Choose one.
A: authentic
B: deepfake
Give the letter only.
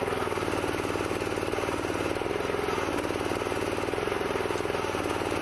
A